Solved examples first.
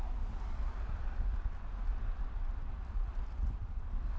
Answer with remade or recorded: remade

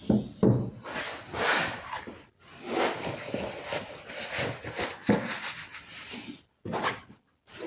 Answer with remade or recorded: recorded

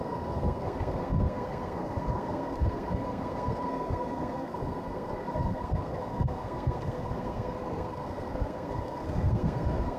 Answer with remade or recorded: remade